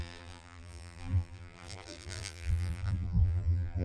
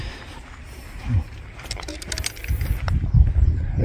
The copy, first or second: first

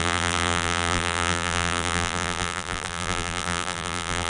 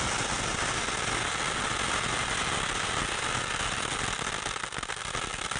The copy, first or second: first